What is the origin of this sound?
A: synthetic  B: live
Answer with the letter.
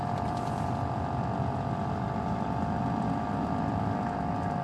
A